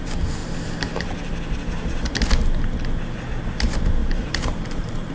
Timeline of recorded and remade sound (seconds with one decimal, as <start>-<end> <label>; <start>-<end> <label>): 0.0-4.0 recorded; 4.0-5.1 remade